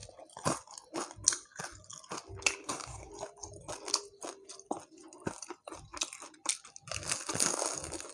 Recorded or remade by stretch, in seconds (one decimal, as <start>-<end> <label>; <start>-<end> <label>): 0.0-2.6 recorded; 2.6-3.1 remade; 3.1-8.1 recorded